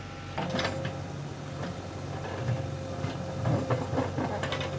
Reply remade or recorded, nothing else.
recorded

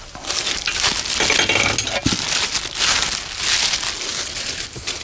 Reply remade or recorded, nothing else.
recorded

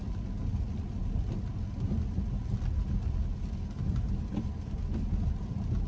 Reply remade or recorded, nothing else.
recorded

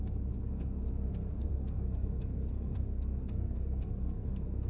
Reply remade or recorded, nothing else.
remade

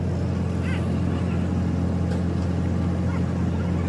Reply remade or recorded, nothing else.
recorded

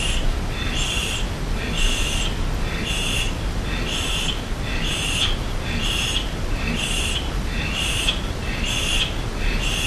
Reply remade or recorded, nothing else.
recorded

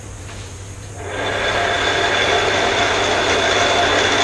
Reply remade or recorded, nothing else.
recorded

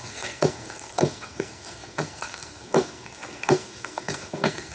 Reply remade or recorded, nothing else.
remade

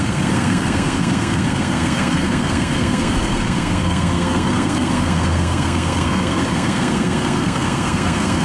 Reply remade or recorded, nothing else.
remade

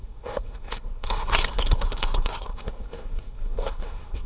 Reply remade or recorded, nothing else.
remade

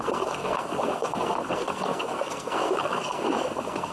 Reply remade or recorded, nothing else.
remade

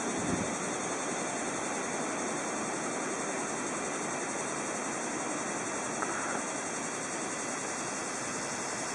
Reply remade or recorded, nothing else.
recorded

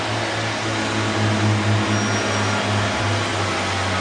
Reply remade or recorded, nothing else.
recorded